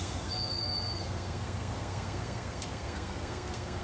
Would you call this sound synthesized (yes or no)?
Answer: yes